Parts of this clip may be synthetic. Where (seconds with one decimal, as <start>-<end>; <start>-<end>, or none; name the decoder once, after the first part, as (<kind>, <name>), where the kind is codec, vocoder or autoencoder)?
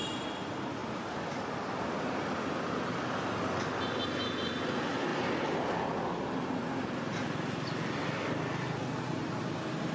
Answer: none